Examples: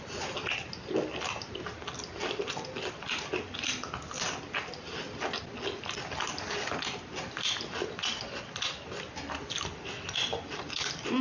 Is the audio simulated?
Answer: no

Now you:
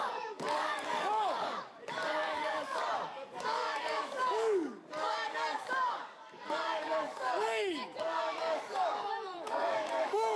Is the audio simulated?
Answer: yes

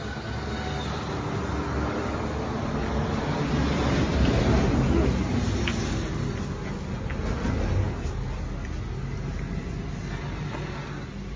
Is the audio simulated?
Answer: no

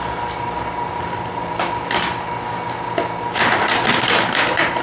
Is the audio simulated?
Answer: no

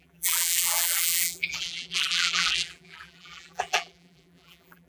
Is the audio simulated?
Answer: yes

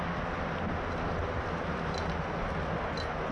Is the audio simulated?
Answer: no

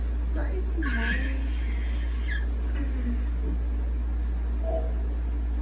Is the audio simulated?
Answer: no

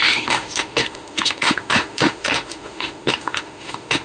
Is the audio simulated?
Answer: yes